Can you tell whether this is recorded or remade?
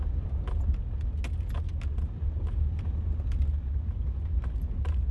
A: recorded